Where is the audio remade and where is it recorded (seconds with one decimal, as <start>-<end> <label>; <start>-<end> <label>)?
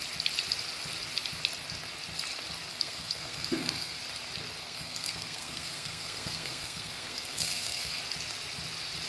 0.0-2.7 recorded; 2.7-4.0 remade; 4.0-4.6 recorded; 4.6-8.0 remade; 8.0-9.1 recorded